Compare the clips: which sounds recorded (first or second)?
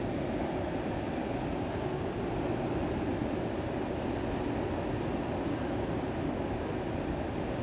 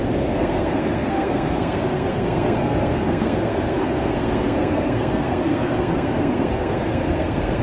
first